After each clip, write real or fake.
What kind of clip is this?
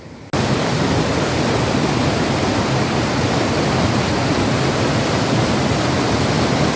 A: real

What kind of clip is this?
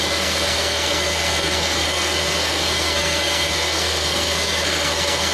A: fake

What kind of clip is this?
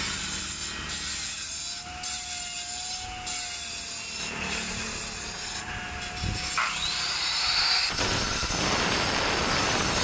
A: real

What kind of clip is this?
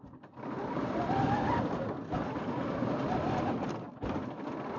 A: real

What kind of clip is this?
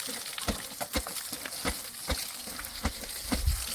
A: real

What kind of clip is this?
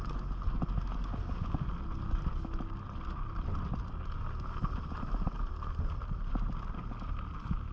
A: real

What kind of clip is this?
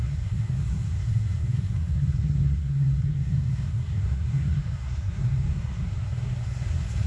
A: fake